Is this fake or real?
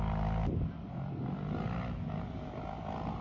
real